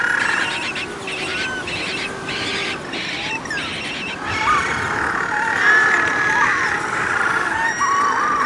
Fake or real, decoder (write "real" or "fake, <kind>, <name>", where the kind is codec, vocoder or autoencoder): real